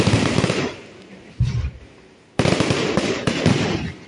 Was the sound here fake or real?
fake